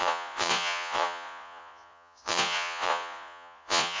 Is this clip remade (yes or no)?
yes